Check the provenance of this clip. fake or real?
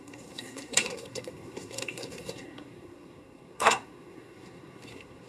fake